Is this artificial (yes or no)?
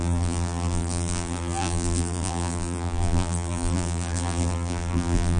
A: yes